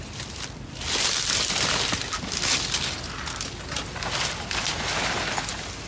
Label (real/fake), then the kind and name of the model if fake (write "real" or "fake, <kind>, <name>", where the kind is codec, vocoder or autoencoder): real